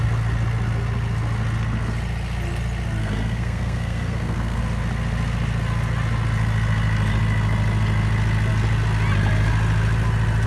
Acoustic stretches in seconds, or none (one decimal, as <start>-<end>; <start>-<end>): 0.0-3.0; 4.6-10.5